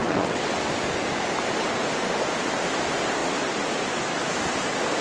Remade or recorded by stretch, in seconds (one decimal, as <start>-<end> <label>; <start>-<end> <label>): 0.0-0.7 remade; 0.7-5.0 recorded